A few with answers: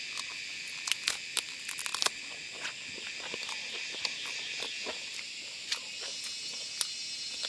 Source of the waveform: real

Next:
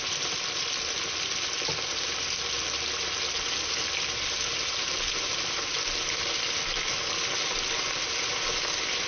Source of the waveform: real